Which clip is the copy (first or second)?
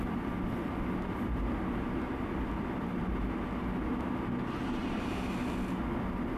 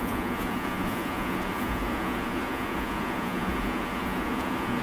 second